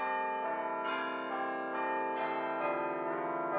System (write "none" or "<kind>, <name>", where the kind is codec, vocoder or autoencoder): none